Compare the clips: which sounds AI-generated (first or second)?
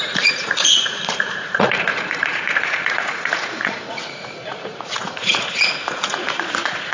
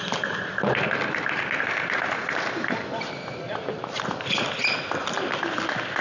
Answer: first